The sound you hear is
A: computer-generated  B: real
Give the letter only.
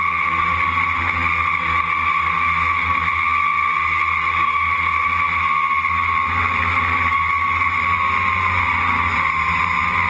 B